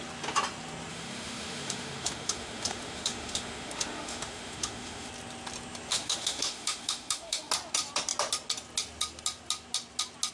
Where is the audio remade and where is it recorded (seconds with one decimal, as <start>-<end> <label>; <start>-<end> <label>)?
0.0-0.9 recorded; 0.9-5.1 remade; 5.1-5.9 recorded; 5.9-7.5 remade; 7.5-10.3 recorded